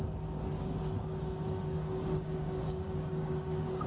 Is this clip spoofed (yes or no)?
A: yes